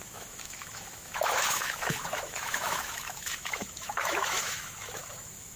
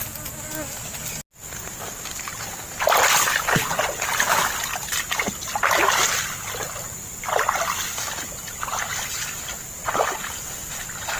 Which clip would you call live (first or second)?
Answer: second